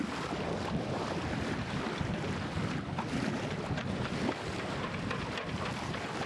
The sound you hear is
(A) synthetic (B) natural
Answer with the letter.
B